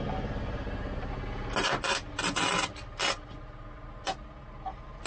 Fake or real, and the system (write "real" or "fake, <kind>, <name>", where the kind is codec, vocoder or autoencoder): real